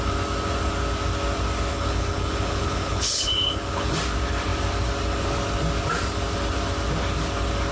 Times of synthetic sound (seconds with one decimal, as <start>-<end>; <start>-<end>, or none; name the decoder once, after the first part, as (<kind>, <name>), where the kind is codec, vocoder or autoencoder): 1.7-4.0 (codec, HILCodec)